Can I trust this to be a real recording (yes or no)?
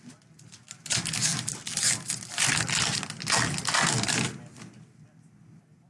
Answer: yes